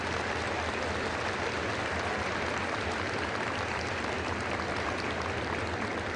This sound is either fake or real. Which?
real